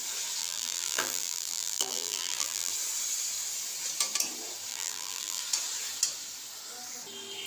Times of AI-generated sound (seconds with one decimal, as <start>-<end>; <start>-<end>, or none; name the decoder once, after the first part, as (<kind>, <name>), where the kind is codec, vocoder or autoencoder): 0.4-2.7 (vocoder, BigVGAN v2); 4.7-5.4